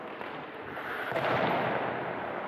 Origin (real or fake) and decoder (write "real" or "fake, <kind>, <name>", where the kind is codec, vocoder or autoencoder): real